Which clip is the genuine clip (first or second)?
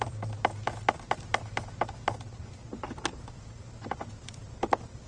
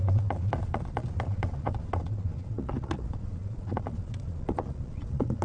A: first